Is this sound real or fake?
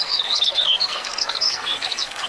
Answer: fake